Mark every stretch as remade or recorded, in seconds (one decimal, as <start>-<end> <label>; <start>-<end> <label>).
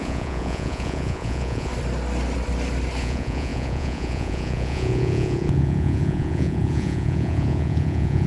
0.0-1.7 remade; 1.7-3.0 recorded; 3.0-8.3 remade